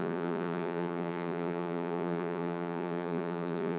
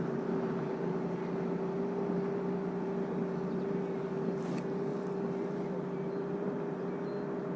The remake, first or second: first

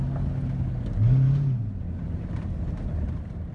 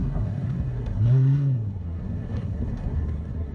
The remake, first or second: second